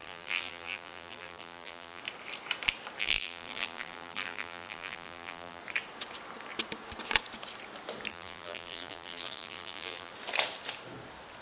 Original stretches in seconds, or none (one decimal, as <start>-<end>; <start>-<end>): 2.0-3.0; 5.6-8.1; 10.1-11.4